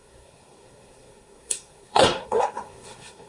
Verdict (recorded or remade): remade